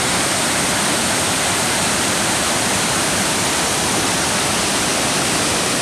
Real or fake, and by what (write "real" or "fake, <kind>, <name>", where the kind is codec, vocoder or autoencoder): fake, vocoder, BigVGAN v2